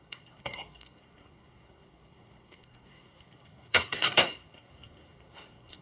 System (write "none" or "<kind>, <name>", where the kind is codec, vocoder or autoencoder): codec, SNAC